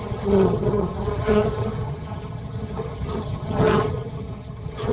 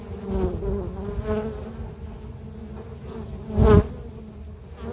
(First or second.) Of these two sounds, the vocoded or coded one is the first